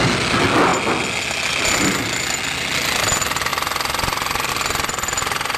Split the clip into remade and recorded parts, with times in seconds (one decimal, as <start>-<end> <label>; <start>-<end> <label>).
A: 0.0-5.6 recorded